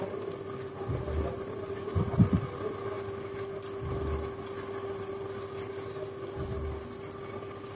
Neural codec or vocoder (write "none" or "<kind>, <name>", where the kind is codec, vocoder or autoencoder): none